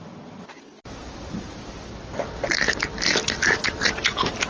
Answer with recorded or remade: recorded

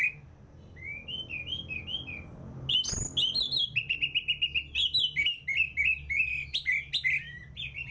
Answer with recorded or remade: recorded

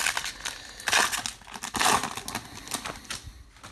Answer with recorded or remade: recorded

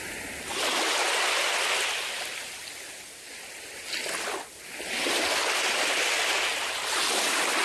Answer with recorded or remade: recorded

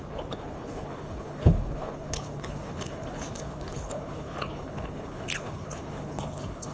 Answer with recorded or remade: remade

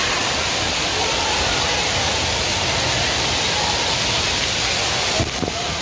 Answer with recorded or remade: recorded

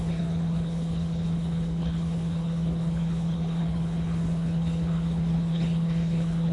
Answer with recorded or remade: remade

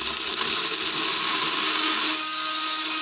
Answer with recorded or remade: recorded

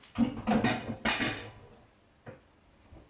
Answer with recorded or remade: recorded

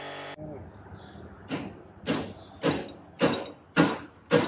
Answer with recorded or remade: recorded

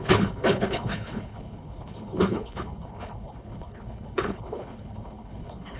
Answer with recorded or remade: remade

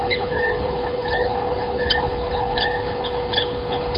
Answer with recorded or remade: remade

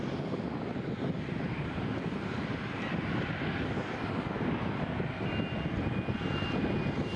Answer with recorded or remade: recorded